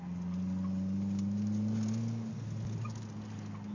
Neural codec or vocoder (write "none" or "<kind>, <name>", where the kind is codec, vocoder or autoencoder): none